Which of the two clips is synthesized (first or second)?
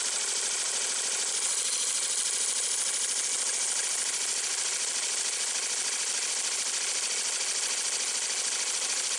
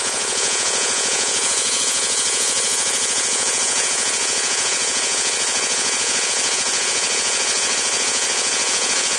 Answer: second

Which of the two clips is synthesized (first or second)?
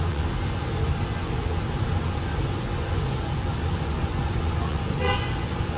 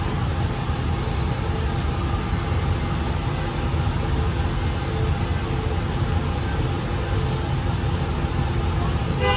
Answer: first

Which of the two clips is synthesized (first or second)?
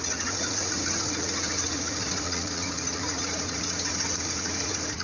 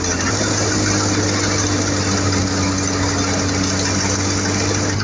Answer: first